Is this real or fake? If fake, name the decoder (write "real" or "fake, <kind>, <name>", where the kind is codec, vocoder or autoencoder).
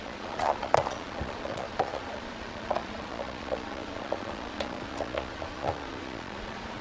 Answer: fake, vocoder, Vocos